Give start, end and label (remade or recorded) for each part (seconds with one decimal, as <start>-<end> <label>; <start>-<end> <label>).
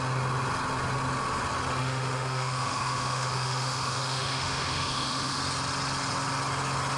0.0-1.8 recorded; 1.8-5.4 remade; 5.4-7.0 recorded